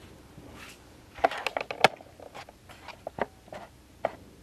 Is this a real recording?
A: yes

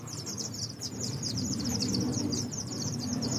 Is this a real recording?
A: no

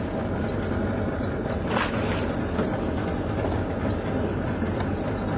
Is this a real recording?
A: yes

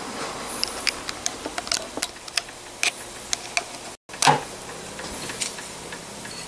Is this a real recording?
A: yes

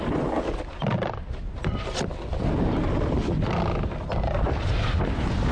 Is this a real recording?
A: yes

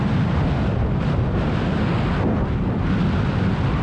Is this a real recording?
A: yes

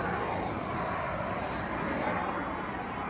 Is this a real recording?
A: yes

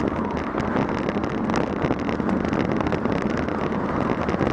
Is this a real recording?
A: yes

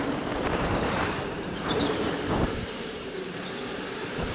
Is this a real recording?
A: no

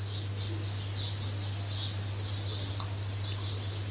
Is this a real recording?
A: yes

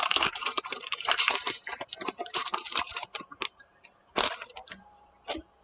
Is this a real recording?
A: no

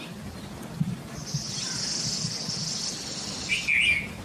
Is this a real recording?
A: yes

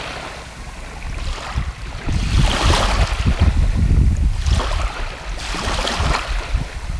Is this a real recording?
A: yes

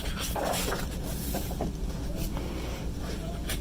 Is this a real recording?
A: yes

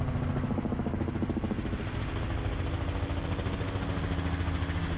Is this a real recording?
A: yes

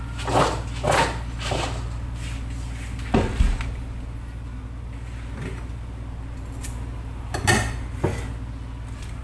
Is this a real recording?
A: yes